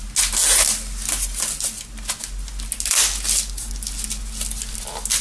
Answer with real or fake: real